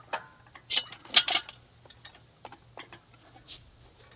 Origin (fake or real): real